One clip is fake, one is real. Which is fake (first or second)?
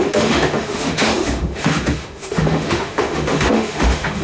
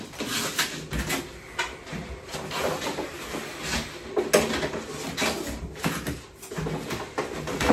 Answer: first